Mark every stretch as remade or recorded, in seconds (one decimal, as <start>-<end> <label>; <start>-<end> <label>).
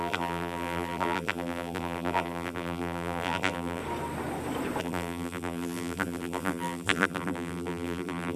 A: 0.0-3.8 remade; 3.8-4.8 recorded; 4.8-8.4 remade